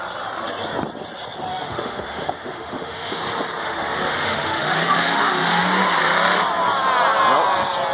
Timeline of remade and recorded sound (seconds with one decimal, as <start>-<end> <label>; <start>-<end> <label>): 0.0-1.5 recorded; 1.5-3.2 remade; 3.2-3.6 recorded; 3.6-5.6 remade; 5.6-7.9 recorded